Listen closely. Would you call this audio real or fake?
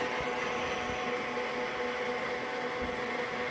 real